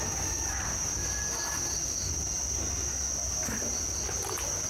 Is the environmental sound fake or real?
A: real